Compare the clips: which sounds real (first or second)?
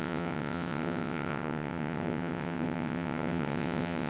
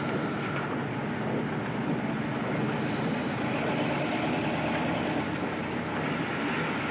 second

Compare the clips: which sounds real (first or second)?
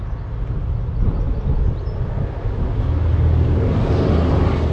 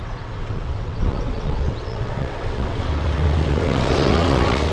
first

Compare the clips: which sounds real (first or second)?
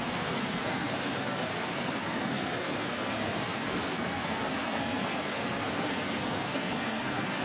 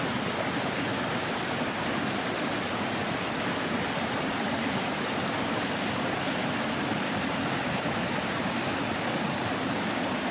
second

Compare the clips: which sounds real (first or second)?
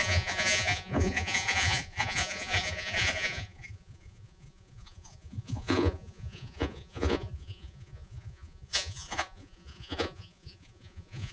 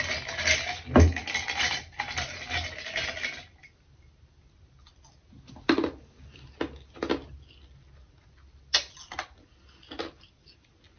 second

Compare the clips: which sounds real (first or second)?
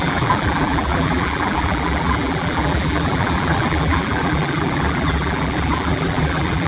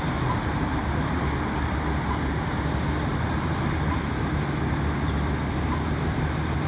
second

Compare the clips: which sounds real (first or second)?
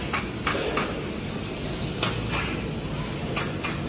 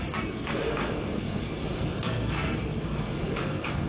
first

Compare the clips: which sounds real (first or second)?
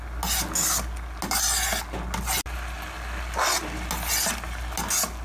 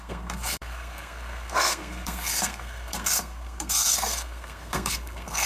first